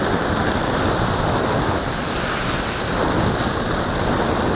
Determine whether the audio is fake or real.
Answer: fake